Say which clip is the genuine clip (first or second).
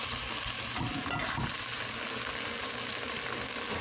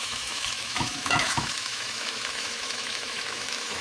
first